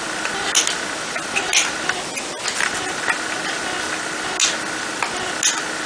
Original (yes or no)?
yes